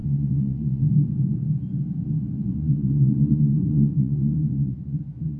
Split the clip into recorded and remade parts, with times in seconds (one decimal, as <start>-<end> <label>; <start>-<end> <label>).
0.0-0.8 remade; 0.8-2.2 recorded; 2.2-5.4 remade